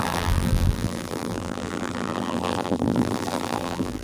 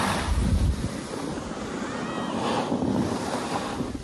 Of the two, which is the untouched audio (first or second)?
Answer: second